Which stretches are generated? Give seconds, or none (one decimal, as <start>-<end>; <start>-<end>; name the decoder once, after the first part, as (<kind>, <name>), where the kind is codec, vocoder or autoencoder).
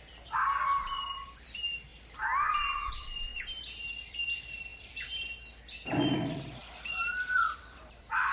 0.0-1.9 (vocoder, BigVGAN v2); 2.5-3.3; 3.9-8.3